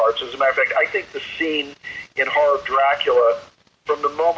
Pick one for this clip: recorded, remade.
recorded